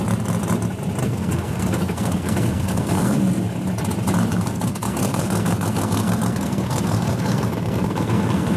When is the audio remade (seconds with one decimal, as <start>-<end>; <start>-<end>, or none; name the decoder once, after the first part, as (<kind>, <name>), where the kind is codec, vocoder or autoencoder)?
1.0-3.2 (codec, SNAC); 4.3-8.6